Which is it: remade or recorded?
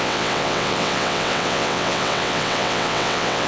remade